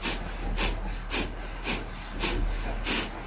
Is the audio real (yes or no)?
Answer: yes